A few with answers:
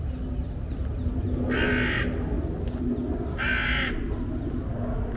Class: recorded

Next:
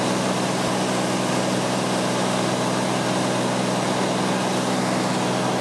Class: recorded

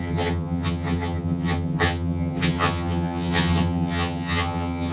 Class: remade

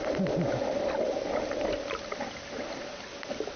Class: recorded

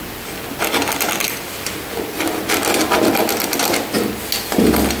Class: recorded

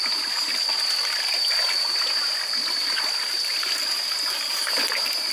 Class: recorded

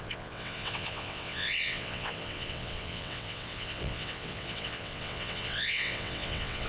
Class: remade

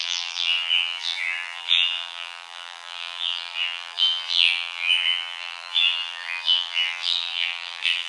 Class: remade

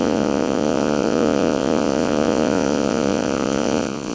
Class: remade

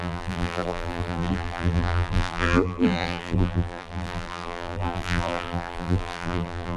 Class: remade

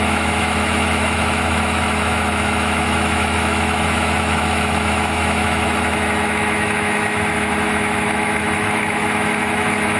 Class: remade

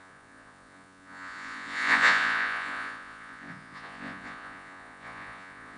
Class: remade